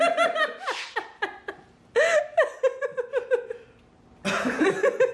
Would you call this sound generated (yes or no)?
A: no